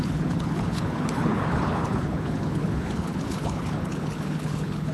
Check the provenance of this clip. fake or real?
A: fake